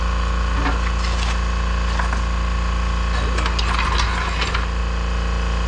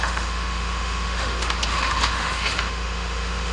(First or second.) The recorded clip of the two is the first